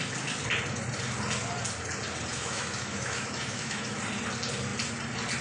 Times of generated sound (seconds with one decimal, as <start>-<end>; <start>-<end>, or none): 2.3-4.0